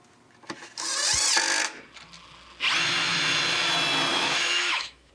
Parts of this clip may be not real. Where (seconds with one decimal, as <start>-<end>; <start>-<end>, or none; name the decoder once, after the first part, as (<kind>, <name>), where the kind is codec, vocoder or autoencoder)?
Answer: 4.1-5.1 (autoencoder, DAC-VAE)

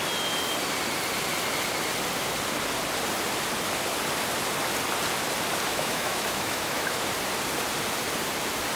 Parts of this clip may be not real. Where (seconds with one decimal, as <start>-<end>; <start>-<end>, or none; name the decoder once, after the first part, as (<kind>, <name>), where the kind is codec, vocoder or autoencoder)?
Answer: 5.7-6.9 (autoencoder, DAC-VAE)

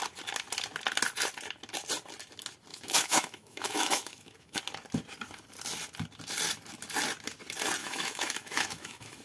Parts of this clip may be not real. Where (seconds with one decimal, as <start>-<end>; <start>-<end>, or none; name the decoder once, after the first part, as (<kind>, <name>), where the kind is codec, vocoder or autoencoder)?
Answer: 2.7-4.6 (autoencoder, DAC-VAE); 7.8-9.2

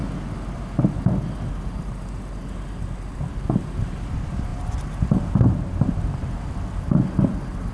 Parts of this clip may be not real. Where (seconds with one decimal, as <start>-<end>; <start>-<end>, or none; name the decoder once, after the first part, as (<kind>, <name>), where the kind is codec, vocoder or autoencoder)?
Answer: none